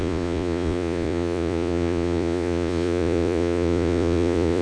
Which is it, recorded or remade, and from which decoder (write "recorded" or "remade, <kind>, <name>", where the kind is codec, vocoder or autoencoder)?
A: remade, vocoder, Vocos